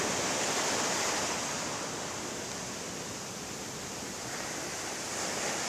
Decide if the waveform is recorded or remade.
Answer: recorded